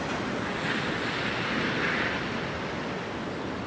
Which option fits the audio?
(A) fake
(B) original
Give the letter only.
B